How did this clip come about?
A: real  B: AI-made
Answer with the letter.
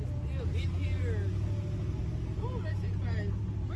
A